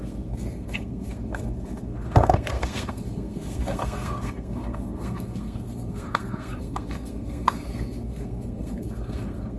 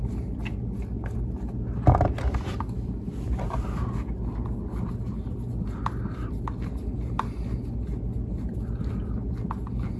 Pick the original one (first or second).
second